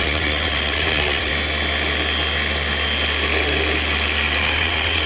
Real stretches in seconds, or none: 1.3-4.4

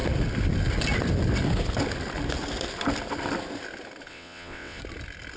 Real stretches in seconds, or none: 0.0-4.1; 4.8-5.4

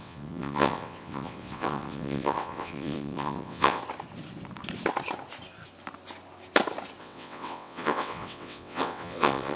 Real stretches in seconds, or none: 3.8-7.0

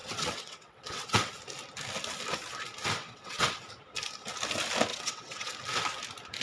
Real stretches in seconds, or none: 1.3-3.0; 3.6-4.9; 5.5-6.4

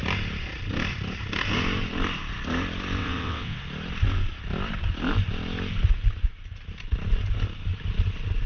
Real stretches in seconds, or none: 0.0-3.0; 3.6-8.5